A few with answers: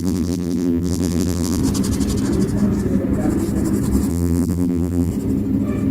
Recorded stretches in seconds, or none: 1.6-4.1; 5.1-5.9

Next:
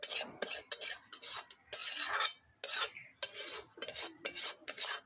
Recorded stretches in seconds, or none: 0.0-5.1